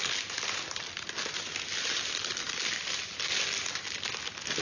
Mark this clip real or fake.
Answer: real